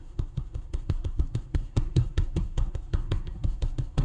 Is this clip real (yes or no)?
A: no